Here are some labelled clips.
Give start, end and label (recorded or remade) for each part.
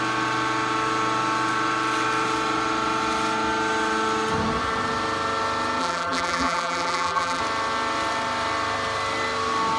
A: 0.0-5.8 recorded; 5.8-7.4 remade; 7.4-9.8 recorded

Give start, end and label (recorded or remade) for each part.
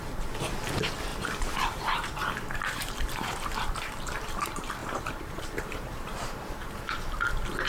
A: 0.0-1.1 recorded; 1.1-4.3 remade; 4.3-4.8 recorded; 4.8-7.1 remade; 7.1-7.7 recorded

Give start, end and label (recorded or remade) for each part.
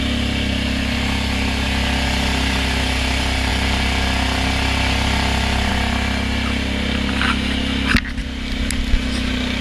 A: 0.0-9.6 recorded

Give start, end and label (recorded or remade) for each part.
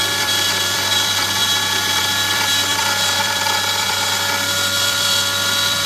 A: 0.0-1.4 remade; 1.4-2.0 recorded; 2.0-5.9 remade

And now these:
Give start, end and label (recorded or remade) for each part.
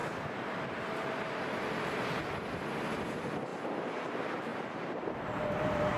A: 0.0-1.5 remade; 1.5-4.5 recorded; 4.5-6.0 remade